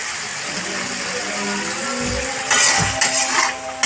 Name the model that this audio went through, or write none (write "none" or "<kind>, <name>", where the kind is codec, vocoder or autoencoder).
none